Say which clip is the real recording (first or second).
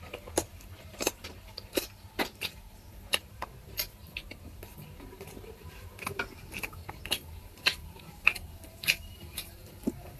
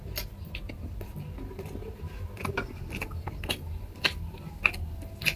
second